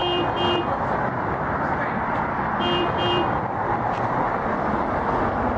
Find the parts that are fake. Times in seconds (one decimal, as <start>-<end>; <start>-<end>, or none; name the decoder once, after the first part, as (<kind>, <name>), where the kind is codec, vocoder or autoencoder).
none